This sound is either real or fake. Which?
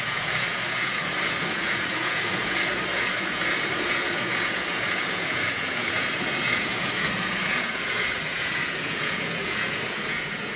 fake